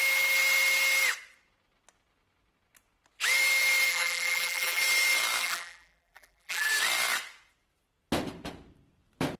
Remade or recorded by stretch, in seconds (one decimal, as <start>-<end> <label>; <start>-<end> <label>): 0.0-3.9 recorded; 3.9-4.8 remade; 4.8-5.4 recorded; 5.4-6.7 remade; 6.7-9.4 recorded